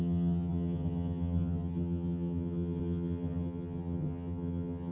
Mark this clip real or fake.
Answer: fake